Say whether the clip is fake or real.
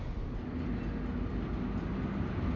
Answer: real